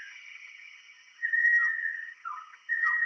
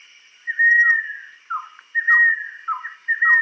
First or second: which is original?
second